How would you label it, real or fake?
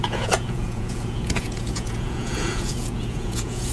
fake